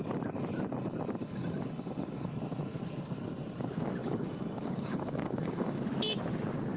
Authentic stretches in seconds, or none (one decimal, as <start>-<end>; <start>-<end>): 0.0-1.2; 2.3-4.0; 5.8-6.8